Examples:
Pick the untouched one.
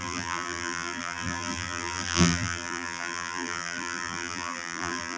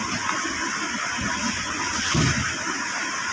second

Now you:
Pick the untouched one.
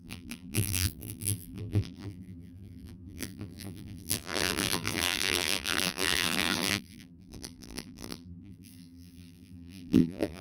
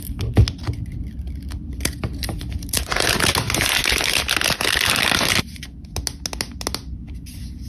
second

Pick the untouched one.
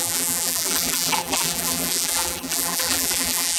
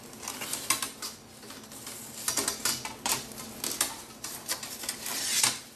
second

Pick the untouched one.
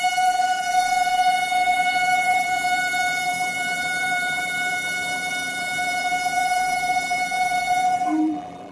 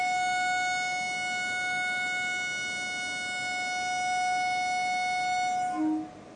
second